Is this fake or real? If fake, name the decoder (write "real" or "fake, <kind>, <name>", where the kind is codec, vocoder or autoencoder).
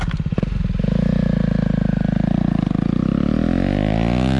real